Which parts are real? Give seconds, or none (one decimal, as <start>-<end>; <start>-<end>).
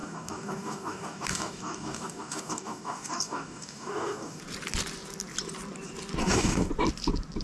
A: 4.4-6.2; 6.7-7.4